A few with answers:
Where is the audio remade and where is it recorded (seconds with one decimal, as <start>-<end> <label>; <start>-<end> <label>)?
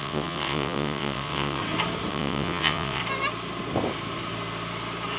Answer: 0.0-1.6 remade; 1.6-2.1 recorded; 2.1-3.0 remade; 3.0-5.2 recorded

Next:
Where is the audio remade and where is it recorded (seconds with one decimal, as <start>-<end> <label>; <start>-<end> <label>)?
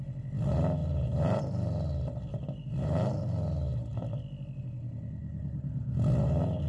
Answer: 0.0-0.8 recorded; 0.8-1.4 remade; 1.4-2.3 recorded; 2.3-2.9 remade; 2.9-5.2 recorded; 5.2-5.7 remade; 5.7-6.7 recorded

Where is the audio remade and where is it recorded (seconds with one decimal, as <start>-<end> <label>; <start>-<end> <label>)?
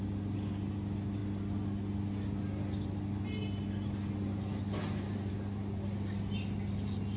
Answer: 0.0-7.2 recorded